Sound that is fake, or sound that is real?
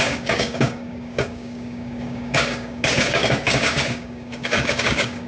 fake